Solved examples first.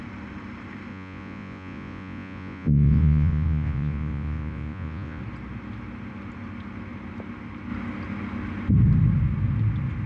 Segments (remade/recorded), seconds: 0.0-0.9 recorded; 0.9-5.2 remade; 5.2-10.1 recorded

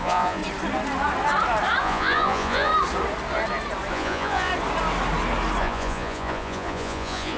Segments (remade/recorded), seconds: 0.0-0.4 remade; 0.4-1.8 recorded; 1.8-2.7 remade; 2.7-3.9 recorded; 3.9-4.5 remade; 4.5-5.6 recorded; 5.6-7.4 remade

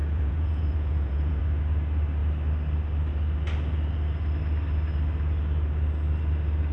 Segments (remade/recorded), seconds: 0.0-1.4 remade; 1.4-6.7 recorded

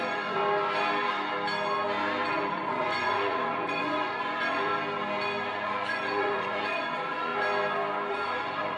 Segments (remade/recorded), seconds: 0.0-0.4 remade; 0.4-2.3 recorded; 2.3-4.7 remade; 4.7-5.5 recorded; 5.5-7.3 remade; 7.3-8.1 recorded; 8.1-8.8 remade